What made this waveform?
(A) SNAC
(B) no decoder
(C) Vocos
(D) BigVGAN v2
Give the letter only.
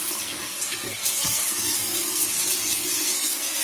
A